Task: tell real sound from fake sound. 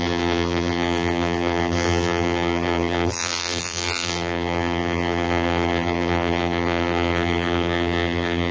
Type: fake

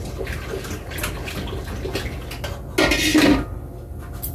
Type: real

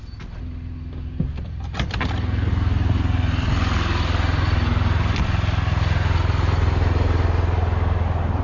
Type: real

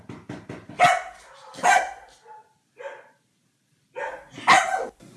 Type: real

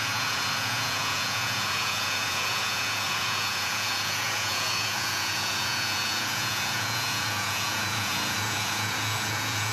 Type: fake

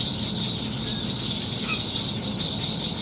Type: real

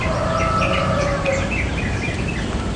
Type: real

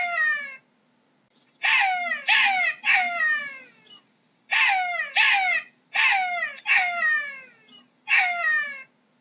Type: real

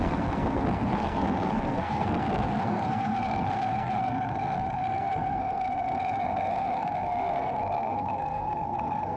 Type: fake